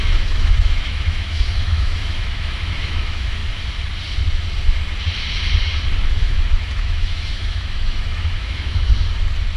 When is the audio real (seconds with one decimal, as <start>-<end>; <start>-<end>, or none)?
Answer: 3.4-6.1; 8.9-9.6